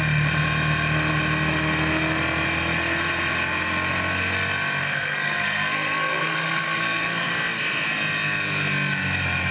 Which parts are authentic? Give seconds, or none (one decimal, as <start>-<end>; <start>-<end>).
0.0-4.8; 7.3-9.5